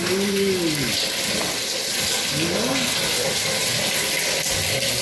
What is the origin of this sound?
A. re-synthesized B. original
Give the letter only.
B